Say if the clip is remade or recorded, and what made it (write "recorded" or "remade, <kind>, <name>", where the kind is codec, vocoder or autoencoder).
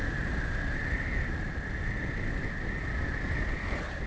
recorded